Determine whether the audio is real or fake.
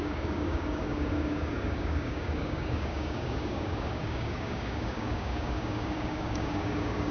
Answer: fake